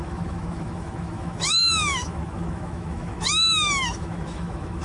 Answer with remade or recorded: remade